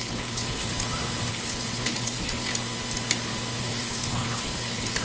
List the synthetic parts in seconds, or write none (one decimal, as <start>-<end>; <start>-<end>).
0.0-0.7; 1.3-2.5; 3.6-5.0